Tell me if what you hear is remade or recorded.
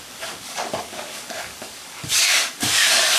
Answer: remade